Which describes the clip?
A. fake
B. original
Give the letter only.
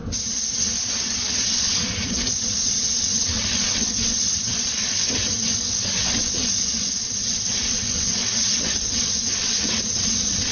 A